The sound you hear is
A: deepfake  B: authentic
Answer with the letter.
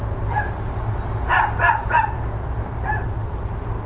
B